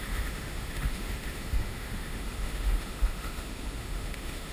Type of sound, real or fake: fake